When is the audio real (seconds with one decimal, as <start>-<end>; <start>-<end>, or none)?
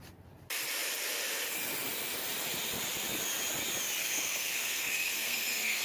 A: 0.0-4.0